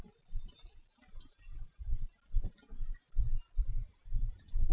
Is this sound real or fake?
real